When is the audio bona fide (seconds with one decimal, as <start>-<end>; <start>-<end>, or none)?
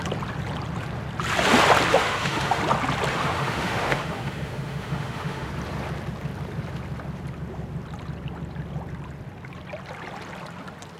0.0-1.9; 2.6-3.1; 5.5-11.0